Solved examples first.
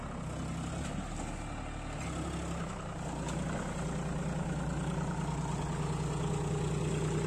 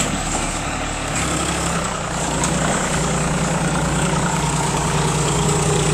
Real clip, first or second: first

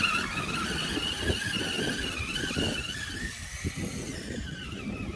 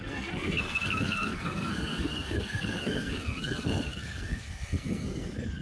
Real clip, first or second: first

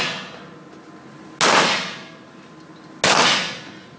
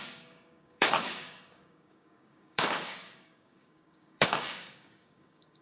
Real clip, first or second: first